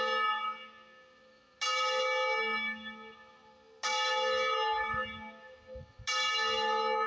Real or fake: real